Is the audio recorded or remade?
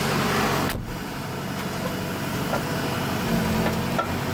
recorded